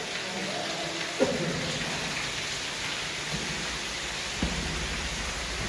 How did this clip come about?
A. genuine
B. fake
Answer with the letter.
A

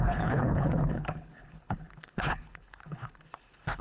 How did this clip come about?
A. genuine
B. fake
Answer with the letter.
B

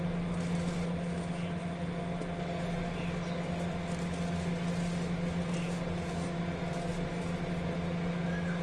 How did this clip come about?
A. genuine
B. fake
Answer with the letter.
A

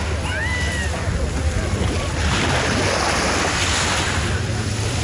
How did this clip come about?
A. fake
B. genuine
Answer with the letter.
B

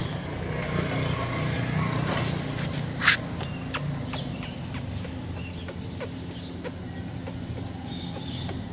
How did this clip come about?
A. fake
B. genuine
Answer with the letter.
B